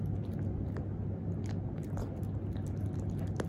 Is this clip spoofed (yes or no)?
no